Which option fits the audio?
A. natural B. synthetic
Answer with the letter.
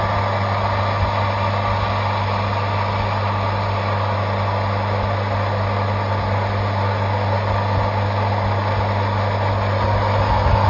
A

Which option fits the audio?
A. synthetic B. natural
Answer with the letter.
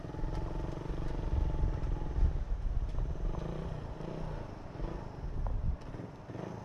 B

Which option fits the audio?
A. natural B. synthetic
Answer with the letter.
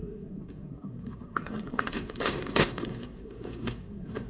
B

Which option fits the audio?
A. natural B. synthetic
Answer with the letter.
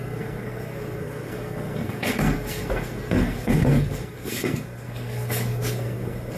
B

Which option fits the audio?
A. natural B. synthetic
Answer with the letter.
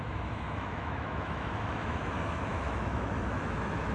B